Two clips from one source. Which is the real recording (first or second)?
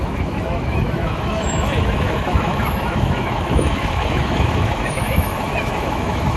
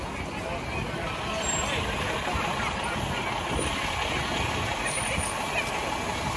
second